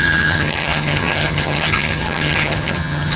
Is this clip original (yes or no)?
no